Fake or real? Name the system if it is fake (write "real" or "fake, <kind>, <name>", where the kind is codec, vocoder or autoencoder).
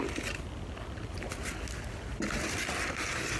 real